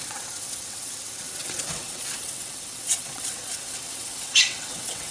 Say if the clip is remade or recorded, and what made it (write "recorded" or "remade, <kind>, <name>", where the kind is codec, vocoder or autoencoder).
remade, vocoder, WaveNeXt